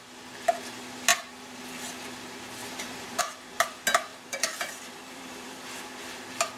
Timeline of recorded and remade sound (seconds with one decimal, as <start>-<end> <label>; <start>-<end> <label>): 0.0-2.6 recorded; 2.6-3.2 remade; 3.2-4.1 recorded; 4.1-5.7 remade; 5.7-6.6 recorded

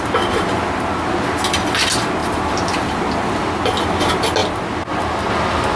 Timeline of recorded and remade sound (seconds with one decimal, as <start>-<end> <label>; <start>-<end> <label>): 0.0-2.2 recorded; 2.2-3.6 remade; 3.6-5.8 recorded

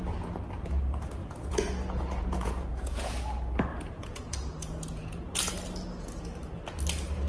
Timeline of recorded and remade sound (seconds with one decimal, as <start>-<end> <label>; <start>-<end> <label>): 0.0-1.2 recorded; 1.2-3.1 remade; 3.1-3.7 recorded; 3.7-5.5 remade; 5.5-7.3 recorded

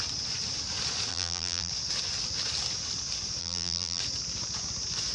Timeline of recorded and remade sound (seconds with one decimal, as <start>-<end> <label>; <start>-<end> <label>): 0.0-1.1 recorded; 1.1-1.7 remade; 1.7-3.4 recorded; 3.4-4.0 remade; 4.0-5.1 recorded

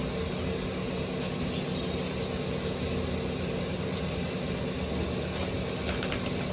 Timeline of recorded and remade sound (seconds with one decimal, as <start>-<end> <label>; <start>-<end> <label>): 0.0-6.5 recorded

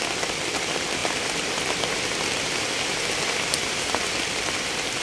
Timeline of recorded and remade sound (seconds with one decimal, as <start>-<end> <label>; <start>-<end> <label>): 0.0-5.0 recorded

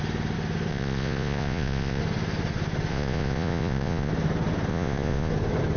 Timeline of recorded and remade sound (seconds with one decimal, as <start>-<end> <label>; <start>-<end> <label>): 0.0-0.7 recorded; 0.7-2.0 remade; 2.0-2.9 recorded; 2.9-4.1 remade; 4.1-4.7 recorded; 4.7-5.3 remade; 5.3-5.8 recorded

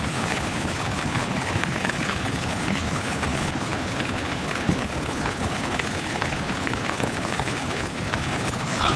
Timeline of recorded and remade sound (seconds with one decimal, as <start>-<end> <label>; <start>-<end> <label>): 0.0-9.0 remade